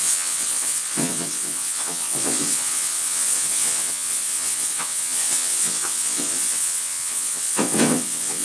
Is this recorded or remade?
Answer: remade